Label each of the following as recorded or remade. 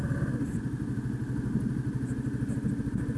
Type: recorded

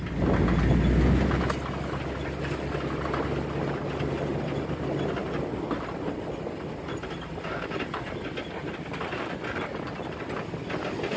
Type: recorded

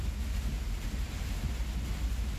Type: recorded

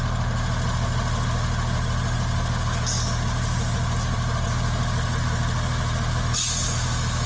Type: recorded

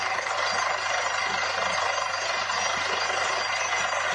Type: recorded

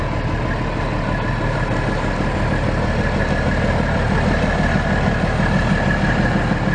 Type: recorded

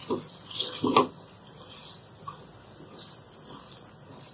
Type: recorded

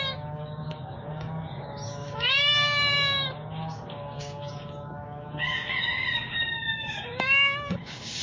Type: remade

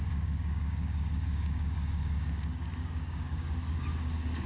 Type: remade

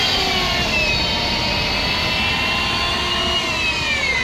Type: recorded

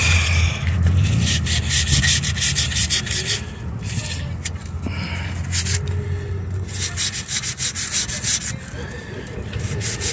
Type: recorded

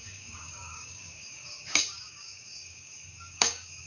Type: remade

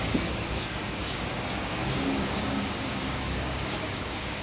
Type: remade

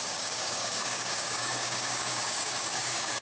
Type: remade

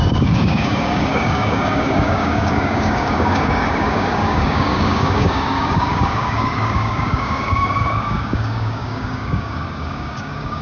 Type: remade